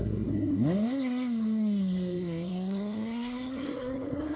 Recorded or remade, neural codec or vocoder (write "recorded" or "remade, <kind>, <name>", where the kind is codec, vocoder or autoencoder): remade, codec, SNAC